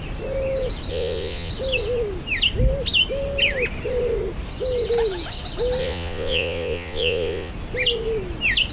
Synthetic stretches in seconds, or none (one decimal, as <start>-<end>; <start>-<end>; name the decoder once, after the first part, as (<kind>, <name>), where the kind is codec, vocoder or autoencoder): 0.9-1.5 (vocoder, Vocos); 5.8-7.5